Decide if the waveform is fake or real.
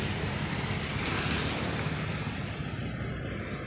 real